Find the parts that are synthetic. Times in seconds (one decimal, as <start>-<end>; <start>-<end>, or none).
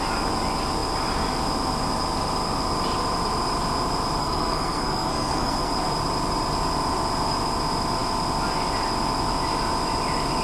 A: 4.2-5.7